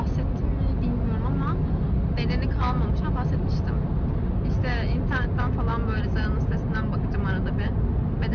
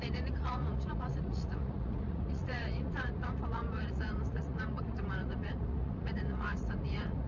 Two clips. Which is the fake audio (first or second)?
second